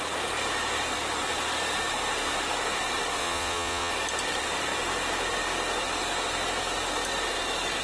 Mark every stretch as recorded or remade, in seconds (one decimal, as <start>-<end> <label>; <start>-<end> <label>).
0.0-3.2 recorded; 3.2-3.9 remade; 3.9-7.8 recorded